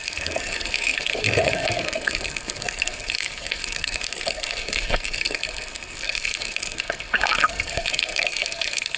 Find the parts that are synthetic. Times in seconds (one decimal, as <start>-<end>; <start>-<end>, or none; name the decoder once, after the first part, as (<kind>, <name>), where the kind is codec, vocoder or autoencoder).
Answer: 0.0-9.0 (codec, SNAC)